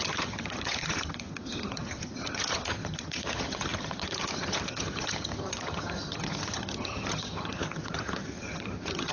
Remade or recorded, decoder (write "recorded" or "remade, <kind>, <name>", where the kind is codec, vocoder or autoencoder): remade, vocoder, HiFi-GAN